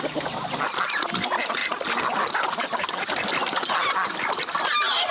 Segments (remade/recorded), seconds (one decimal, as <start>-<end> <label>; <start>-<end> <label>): 0.0-5.1 recorded